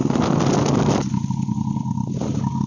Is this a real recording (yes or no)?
yes